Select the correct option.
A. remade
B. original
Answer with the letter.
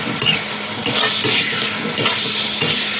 B